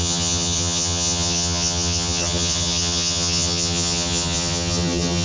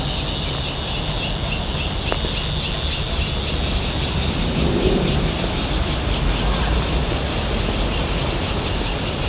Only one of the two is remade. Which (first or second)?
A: first